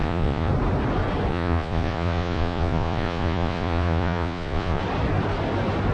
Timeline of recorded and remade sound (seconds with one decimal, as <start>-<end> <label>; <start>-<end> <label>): 0.0-0.5 remade; 0.5-1.3 recorded; 1.3-4.8 remade; 4.8-5.9 recorded